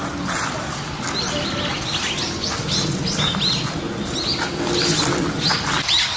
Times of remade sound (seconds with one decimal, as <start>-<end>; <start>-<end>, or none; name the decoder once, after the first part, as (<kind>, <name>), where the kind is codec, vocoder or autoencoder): none